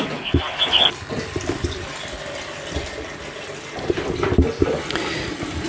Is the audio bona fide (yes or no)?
yes